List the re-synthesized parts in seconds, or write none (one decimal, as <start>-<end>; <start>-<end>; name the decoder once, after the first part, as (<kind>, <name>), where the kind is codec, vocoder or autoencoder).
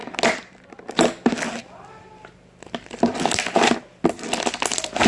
none